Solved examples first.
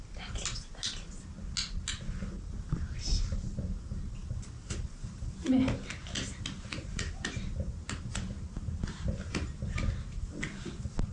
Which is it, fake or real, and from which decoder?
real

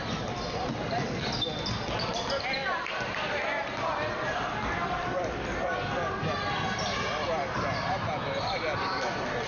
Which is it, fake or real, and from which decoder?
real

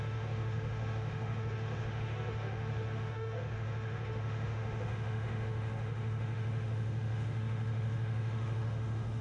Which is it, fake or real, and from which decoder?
fake, autoencoder, DAC-VAE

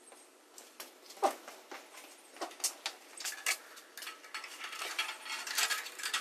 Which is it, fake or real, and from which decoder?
real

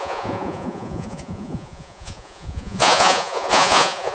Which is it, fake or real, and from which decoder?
fake, vocoder, Vocos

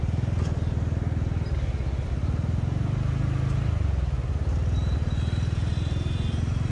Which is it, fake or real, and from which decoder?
real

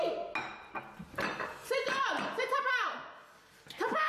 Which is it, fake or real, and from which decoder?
real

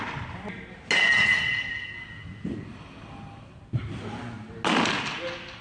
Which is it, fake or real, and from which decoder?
real